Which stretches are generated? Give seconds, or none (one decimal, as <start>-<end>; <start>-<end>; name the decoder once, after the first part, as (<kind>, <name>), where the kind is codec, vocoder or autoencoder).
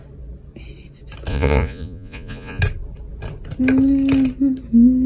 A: 1.3-2.6 (vocoder, Vocos)